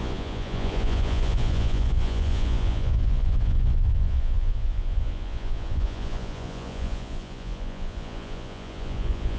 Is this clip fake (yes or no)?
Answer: yes